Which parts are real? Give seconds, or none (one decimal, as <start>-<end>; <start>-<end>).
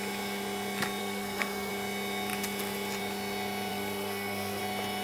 0.0-1.0; 1.7-3.7; 4.6-5.0